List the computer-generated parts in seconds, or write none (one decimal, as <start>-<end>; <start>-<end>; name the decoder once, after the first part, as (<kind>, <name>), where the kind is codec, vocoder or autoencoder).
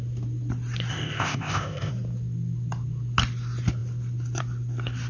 0.9-1.9 (codec, ZipCodec)